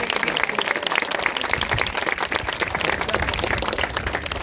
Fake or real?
real